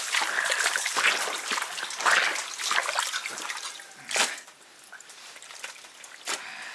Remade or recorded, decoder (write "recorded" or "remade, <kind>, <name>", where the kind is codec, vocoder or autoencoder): recorded